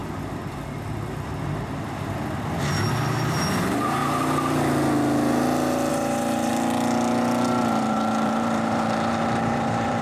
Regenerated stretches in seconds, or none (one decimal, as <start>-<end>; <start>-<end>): 2.9-4.0; 5.9-6.5; 7.8-10.0